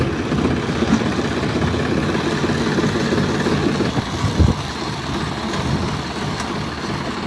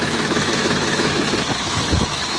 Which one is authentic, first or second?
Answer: first